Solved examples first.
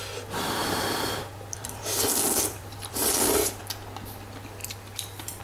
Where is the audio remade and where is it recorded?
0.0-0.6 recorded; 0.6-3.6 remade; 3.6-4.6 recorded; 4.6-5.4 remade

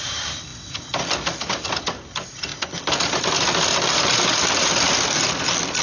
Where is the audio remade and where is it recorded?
0.0-0.5 remade; 0.5-1.7 recorded; 1.7-2.5 remade; 2.5-3.0 recorded; 3.0-5.8 remade